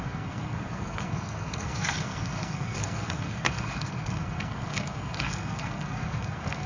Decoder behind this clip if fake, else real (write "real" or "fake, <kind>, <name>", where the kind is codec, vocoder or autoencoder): fake, codec, SNAC